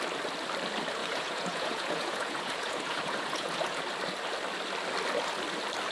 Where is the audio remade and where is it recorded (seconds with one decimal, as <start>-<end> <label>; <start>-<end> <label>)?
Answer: 0.0-1.0 recorded; 1.0-3.8 remade; 3.8-5.9 recorded